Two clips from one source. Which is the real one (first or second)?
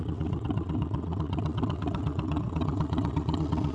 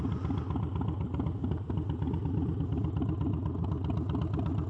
second